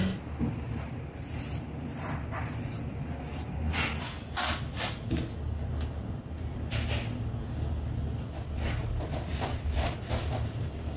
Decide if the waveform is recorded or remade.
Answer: recorded